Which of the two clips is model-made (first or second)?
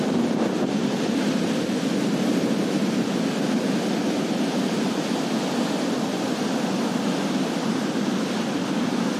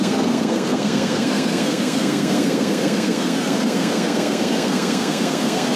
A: second